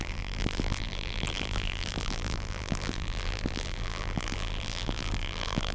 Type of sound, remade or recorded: remade